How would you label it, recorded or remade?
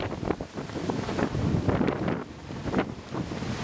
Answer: recorded